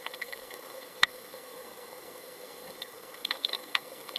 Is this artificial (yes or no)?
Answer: yes